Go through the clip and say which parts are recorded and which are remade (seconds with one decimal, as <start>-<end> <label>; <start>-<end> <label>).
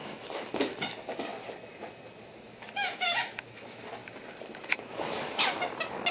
0.0-1.3 remade; 1.3-2.2 recorded; 2.2-4.0 remade; 4.0-4.8 recorded; 4.8-6.1 remade